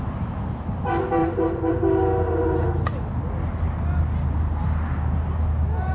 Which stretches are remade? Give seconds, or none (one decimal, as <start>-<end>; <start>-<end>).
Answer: 1.2-1.7